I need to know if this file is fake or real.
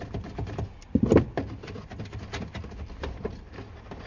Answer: real